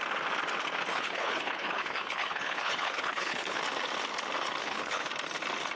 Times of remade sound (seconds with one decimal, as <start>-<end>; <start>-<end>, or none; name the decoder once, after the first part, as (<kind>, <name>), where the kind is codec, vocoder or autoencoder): 0.9-3.6 (codec, HILCodec); 4.6-5.1